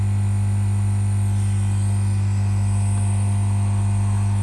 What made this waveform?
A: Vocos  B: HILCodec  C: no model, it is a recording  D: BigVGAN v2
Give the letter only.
C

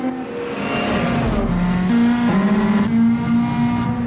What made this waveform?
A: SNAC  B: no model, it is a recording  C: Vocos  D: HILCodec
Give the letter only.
B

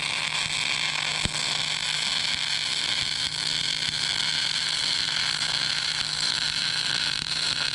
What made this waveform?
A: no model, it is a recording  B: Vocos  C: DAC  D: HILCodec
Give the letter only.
A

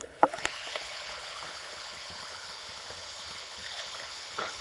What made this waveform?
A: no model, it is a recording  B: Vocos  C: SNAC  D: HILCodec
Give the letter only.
D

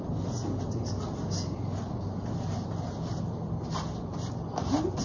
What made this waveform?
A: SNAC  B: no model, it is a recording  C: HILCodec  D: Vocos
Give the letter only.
B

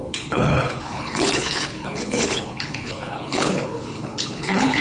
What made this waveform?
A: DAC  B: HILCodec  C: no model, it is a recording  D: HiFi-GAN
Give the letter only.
B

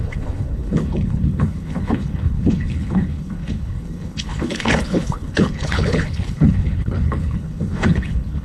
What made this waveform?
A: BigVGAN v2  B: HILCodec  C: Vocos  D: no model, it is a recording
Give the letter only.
B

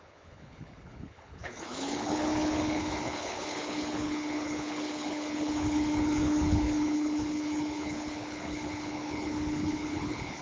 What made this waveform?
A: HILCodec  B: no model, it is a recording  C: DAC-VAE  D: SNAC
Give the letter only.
A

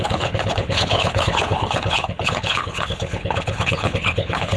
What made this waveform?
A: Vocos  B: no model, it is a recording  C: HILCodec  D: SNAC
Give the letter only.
C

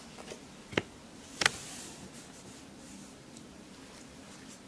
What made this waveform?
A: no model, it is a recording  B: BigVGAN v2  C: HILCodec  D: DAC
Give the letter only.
A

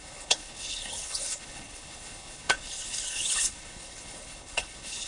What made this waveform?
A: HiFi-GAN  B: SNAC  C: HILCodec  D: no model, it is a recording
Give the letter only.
C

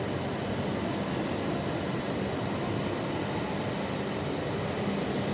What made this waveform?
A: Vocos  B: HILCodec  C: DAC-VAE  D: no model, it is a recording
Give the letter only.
D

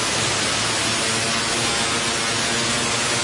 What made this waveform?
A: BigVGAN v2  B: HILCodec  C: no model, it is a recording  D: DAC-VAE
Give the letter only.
C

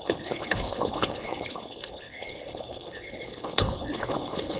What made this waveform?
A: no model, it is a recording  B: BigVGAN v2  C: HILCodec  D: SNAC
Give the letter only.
C